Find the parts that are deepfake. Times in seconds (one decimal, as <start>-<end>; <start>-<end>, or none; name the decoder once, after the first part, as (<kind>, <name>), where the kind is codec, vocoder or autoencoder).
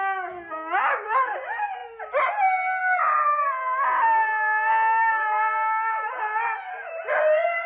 none